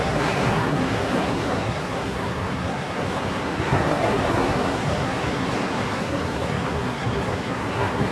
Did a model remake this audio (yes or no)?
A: yes